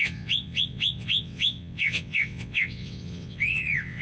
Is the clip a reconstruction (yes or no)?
yes